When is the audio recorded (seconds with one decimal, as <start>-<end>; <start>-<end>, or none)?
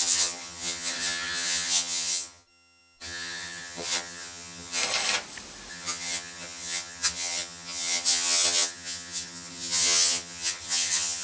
4.8-5.7